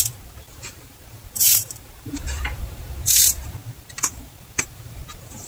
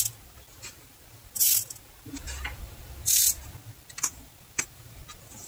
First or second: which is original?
second